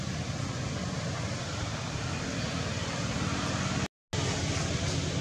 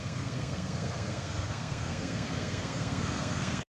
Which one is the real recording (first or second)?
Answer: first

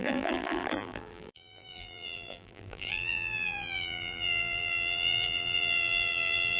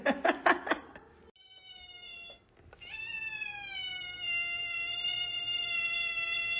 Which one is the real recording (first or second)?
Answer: second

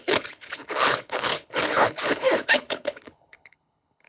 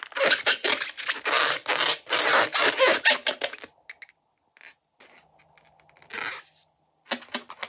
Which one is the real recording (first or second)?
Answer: second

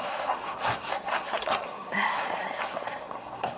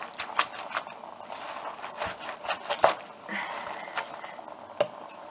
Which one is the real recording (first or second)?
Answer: second